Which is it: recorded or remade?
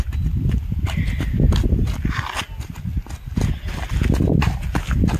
recorded